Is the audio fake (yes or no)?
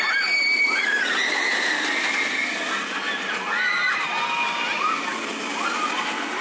yes